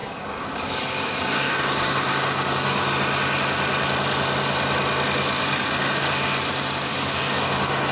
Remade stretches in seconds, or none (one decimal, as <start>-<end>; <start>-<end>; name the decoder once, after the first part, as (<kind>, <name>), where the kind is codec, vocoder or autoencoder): 0.0-2.9 (codec, DAC); 5.4-6.1; 6.9-7.9